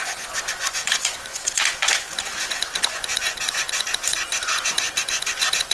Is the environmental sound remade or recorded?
remade